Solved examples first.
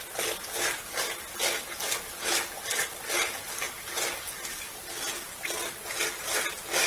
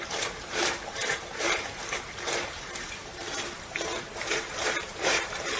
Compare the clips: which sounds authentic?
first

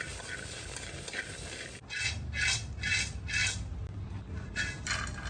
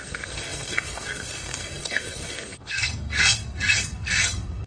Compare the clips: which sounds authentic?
first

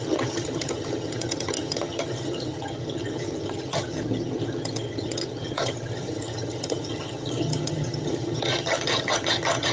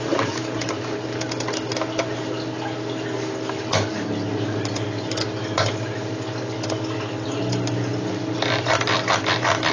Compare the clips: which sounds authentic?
second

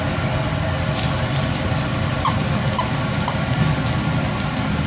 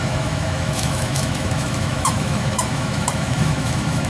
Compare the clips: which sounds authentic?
first